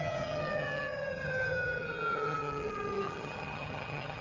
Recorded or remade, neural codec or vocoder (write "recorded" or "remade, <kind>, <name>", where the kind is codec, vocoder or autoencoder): remade, vocoder, HiFi-GAN